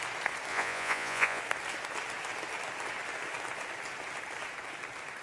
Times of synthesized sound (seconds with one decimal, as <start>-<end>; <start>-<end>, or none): 0.5-1.4